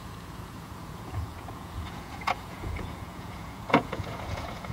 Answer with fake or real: fake